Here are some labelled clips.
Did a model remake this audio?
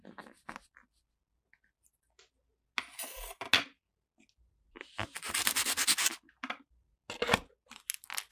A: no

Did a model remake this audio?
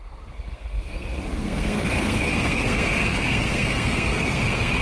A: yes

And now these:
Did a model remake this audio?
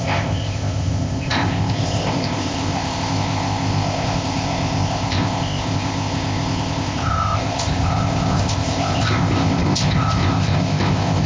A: yes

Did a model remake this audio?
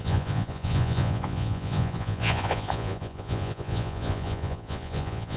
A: yes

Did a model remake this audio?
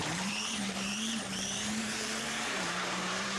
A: yes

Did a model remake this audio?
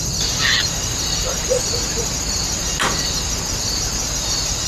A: no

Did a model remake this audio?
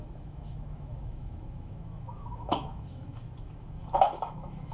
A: yes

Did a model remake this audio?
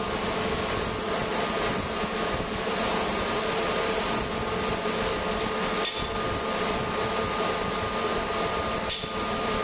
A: no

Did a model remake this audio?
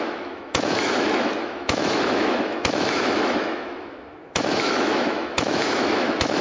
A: yes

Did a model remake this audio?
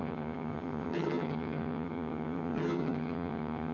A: yes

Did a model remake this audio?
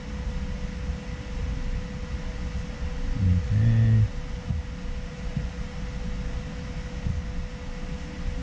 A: no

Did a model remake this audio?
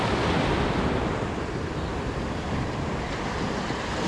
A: no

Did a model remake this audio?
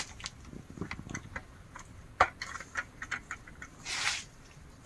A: no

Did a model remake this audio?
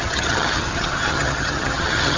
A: yes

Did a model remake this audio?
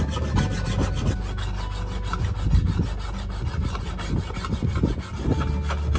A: no